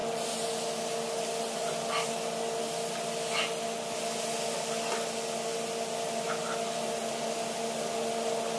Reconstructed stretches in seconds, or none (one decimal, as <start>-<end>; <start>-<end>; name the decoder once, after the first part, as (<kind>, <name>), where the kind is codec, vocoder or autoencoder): none